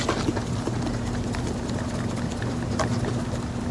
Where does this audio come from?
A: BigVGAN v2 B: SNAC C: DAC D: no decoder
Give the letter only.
D